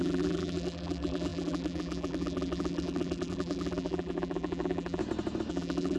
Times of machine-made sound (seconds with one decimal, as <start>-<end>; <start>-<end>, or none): 0.0-5.0; 5.5-6.0